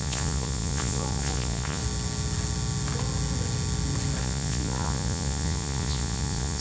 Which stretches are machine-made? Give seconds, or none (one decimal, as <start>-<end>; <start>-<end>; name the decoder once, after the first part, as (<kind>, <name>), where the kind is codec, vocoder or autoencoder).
0.0-1.8 (vocoder, Vocos); 4.2-6.6

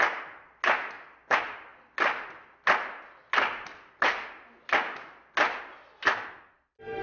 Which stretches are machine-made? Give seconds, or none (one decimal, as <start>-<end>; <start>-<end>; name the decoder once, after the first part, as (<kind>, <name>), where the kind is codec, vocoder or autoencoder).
none

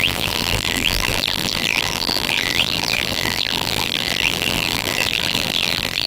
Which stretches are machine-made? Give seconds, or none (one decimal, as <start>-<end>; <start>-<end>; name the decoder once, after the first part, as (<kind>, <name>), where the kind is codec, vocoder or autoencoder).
0.0-6.1 (vocoder, BigVGAN v2)

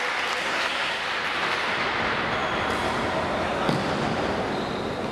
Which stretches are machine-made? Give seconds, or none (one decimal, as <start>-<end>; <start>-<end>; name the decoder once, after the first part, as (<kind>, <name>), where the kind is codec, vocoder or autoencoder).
0.4-1.0 (codec, SNAC)

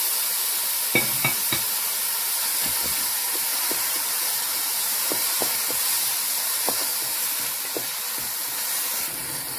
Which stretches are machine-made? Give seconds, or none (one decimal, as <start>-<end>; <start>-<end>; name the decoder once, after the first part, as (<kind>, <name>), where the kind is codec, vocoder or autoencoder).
3.5-5.0 (vocoder, BigVGAN v2)